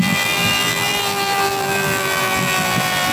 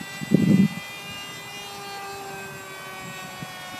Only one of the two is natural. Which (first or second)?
second